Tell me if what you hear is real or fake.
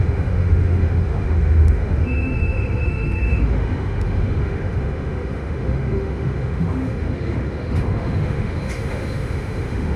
fake